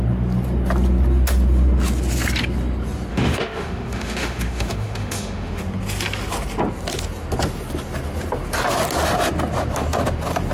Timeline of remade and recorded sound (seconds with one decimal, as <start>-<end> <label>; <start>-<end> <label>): 0.0-3.1 recorded; 3.1-5.6 remade; 5.6-10.5 recorded